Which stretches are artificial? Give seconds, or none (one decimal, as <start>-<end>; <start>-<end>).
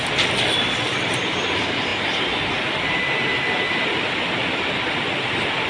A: none